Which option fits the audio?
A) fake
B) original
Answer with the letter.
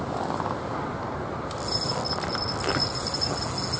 B